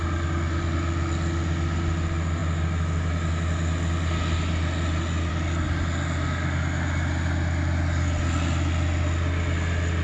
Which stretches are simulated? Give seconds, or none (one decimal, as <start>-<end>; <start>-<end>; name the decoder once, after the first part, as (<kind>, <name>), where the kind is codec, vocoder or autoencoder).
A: none